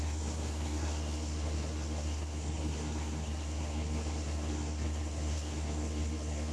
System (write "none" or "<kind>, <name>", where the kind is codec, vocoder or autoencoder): codec, SNAC